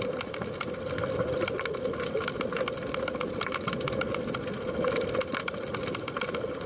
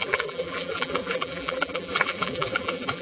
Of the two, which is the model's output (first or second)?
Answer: second